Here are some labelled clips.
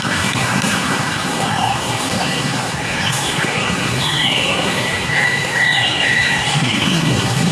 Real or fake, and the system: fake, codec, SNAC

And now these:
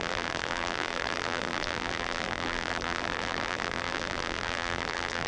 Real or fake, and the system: fake, vocoder, BigVGAN v2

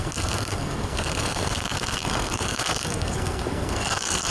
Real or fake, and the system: fake, codec, SNAC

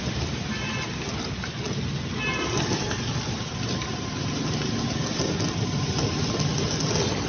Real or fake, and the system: real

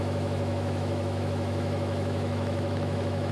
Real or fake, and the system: fake, autoencoder, DAC-VAE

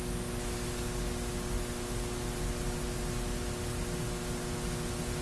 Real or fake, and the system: real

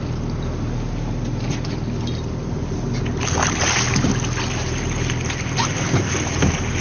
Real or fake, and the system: real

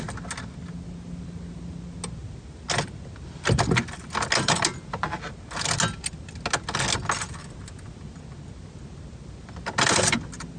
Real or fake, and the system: real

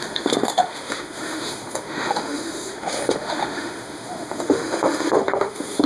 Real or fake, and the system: fake, autoencoder, DAC-VAE